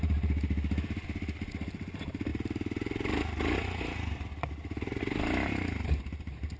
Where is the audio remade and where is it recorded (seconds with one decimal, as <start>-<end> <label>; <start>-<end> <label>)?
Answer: 0.0-6.6 recorded